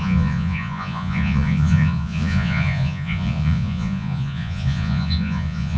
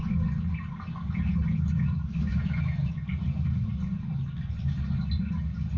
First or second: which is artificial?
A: first